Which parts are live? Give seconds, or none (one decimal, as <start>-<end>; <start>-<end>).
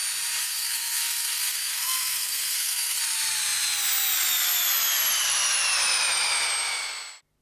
0.0-0.4; 3.0-7.4